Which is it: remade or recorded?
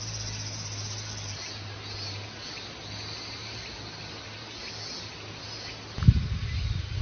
recorded